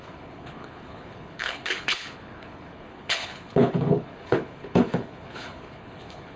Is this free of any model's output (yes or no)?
no